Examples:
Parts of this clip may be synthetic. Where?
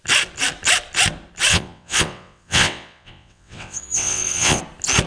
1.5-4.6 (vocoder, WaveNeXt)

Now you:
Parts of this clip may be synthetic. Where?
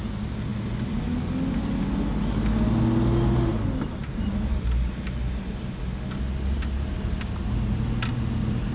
none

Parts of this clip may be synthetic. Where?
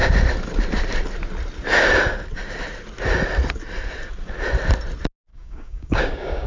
5.3-6.5 (codec, DAC)